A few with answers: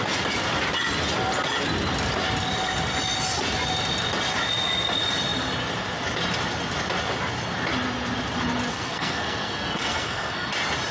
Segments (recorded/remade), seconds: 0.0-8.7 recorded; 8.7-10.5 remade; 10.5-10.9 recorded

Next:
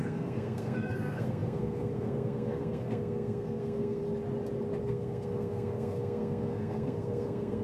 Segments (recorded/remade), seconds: 0.0-4.0 remade; 4.0-4.8 recorded; 4.8-7.6 remade

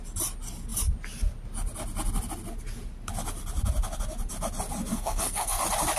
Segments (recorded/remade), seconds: 0.0-4.9 recorded; 4.9-5.6 remade; 5.6-6.0 recorded

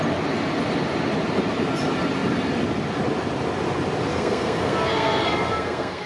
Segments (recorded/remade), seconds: 0.0-4.1 recorded; 4.1-6.1 remade